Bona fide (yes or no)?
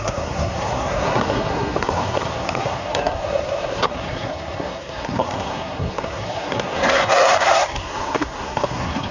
no